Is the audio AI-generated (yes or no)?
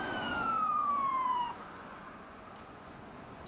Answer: yes